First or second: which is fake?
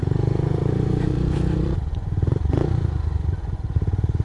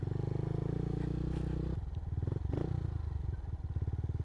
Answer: first